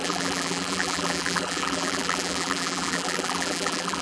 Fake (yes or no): yes